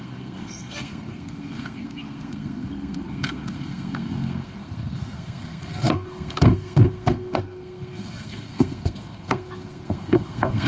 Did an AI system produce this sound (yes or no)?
yes